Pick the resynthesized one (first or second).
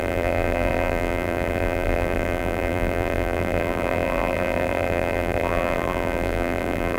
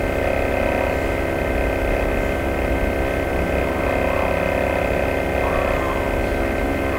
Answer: first